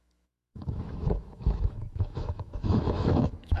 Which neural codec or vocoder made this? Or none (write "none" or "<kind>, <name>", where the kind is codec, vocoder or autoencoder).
autoencoder, DAC-VAE